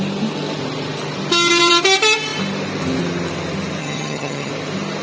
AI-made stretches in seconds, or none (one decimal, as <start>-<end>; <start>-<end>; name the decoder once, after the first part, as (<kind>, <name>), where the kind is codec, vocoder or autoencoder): 3.8-4.5 (vocoder, HiFi-GAN)